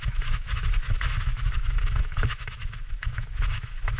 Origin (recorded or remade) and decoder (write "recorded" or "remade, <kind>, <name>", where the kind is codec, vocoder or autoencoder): remade, autoencoder, DAC-VAE